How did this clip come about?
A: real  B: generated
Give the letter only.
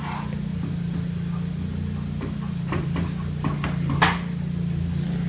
A